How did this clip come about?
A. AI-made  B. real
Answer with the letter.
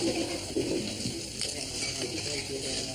B